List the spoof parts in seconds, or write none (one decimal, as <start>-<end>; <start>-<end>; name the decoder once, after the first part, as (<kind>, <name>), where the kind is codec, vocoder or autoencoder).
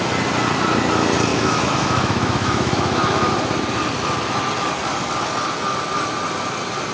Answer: 1.3-3.3 (autoencoder, DAC-VAE)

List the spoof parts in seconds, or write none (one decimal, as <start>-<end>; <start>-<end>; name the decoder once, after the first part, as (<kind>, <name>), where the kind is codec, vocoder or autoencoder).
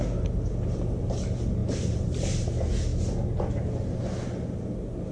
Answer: 1.6-2.5 (vocoder, BigVGAN v2)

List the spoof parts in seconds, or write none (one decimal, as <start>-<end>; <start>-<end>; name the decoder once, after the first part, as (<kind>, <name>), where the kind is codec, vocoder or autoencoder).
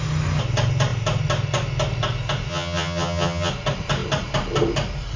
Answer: 2.5-3.5 (vocoder, HiFi-GAN)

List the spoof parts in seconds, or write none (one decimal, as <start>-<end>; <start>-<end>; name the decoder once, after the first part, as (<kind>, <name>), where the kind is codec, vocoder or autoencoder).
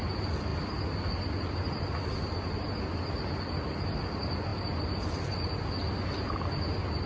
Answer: none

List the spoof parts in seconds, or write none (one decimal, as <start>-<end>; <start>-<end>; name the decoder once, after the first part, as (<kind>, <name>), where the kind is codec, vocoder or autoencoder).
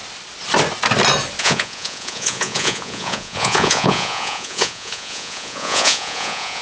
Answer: 1.4-6.6 (vocoder, Vocos)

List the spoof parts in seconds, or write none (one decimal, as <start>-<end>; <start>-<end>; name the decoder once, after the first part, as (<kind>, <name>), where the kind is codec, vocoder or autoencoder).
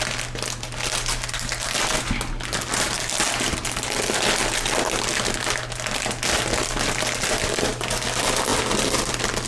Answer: none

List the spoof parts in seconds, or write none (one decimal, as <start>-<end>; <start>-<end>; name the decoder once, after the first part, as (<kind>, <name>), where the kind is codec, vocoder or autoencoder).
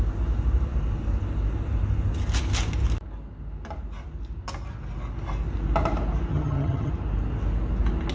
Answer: 6.3-6.9 (vocoder, HiFi-GAN)